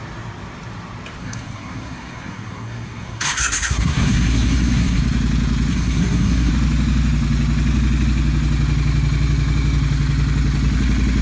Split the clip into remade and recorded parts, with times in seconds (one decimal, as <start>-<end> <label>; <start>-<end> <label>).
0.0-1.2 recorded; 1.2-5.0 remade; 5.0-5.7 recorded; 5.7-6.5 remade; 6.5-11.2 recorded